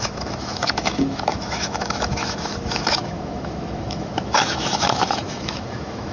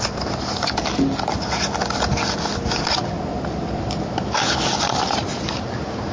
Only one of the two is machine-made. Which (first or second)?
first